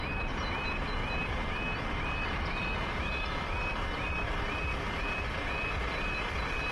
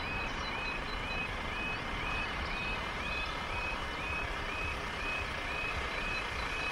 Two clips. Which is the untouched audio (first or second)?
first